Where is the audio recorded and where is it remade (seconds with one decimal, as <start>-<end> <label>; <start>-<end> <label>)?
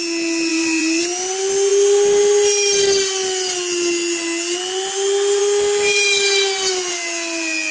0.0-0.5 recorded; 0.5-1.0 remade; 1.0-7.7 recorded